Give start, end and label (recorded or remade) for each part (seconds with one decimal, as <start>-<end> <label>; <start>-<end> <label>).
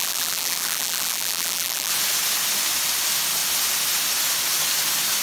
0.0-1.9 remade; 1.9-5.2 recorded